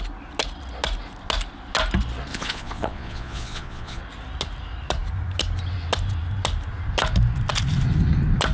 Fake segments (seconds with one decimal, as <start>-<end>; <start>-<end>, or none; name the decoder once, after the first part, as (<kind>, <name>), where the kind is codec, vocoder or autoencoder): 2.3-4.0 (vocoder, Vocos)